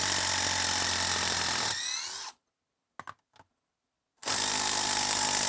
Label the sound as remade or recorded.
recorded